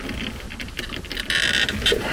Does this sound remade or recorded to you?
recorded